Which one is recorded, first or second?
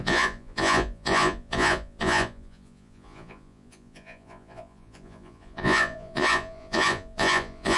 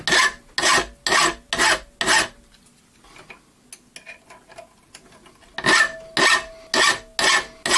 second